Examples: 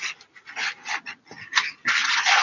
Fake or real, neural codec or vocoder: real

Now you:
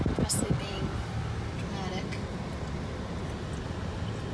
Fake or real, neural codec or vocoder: real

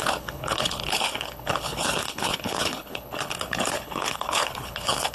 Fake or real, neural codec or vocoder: fake, codec, HILCodec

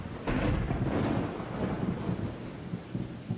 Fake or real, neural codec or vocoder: real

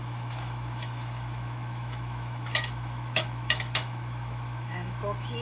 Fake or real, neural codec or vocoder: fake, autoencoder, DAC-VAE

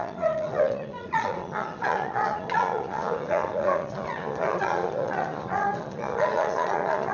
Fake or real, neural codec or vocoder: fake, vocoder, Vocos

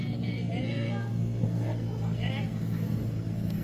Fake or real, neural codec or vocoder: fake, codec, SNAC